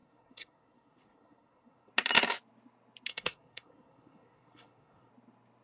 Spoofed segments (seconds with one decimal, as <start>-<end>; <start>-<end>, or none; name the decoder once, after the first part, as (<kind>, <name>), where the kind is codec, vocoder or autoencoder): 0.0-1.9 (codec, SNAC); 3.1-5.1